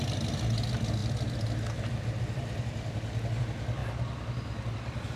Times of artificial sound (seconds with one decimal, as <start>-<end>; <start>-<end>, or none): 1.0-3.4